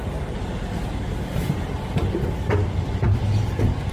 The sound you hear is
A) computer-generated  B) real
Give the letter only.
B